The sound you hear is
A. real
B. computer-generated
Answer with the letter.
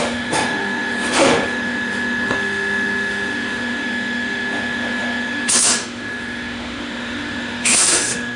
B